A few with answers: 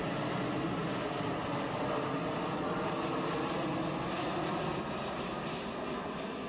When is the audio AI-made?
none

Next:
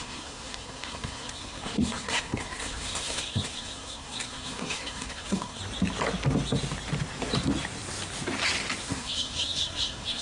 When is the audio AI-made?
0.0-5.6 (codec, SNAC); 8.8-10.2